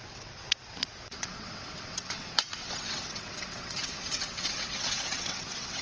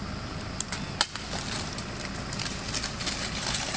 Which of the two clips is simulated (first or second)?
first